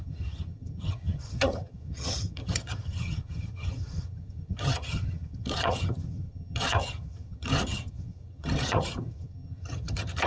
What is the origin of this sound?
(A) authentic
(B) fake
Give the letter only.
B